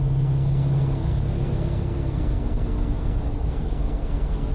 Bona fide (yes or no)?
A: no